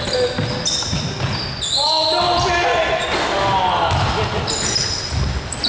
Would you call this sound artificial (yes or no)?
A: no